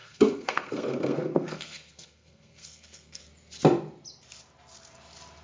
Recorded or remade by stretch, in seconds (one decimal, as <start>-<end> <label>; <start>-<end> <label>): 0.0-3.2 remade; 3.2-5.4 recorded